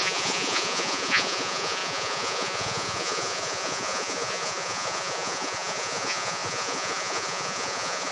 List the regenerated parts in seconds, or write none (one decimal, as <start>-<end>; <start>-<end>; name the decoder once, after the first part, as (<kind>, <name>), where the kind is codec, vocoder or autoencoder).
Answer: 0.0-8.1 (vocoder, Vocos)